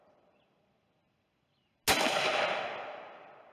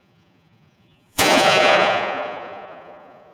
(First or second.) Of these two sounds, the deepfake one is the second